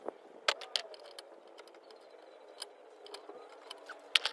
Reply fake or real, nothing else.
real